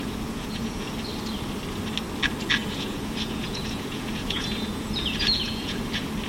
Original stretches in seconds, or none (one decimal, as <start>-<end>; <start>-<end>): 0.9-2.6; 5.8-6.3